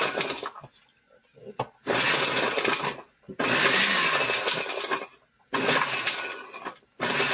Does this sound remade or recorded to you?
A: recorded